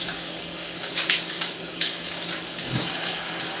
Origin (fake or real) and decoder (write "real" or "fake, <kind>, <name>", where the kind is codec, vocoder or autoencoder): fake, codec, DAC